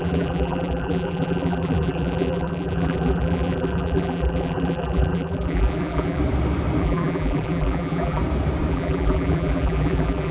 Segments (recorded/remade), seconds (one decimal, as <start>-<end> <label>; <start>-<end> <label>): 0.0-6.2 remade; 6.2-6.8 recorded; 6.8-8.2 remade; 8.2-8.7 recorded; 8.7-10.3 remade